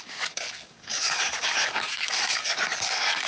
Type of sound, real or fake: fake